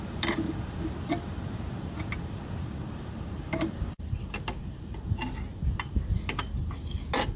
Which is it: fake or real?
real